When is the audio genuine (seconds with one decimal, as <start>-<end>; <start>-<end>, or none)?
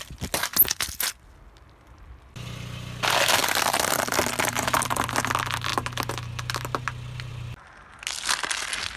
0.0-9.0